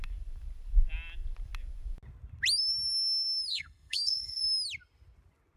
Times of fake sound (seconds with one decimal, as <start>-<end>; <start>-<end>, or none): 3.5-4.4